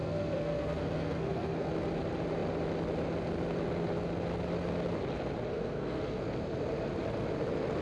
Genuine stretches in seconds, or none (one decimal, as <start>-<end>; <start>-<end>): 1.7-5.5; 6.2-7.8